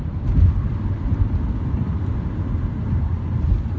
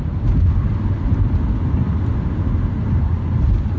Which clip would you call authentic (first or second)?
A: second